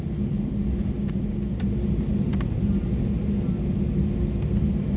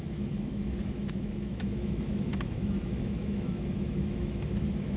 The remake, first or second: second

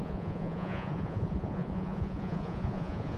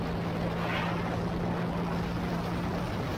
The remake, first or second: first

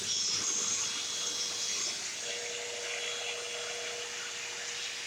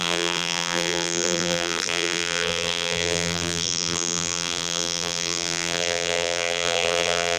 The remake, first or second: second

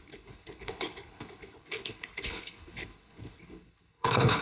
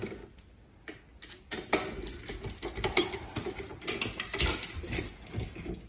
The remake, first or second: first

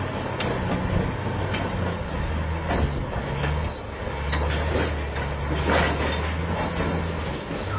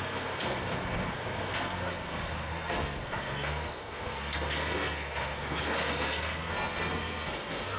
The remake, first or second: second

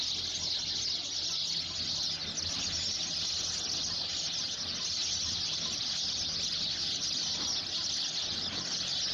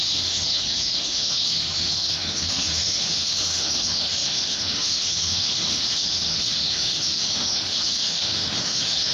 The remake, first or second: second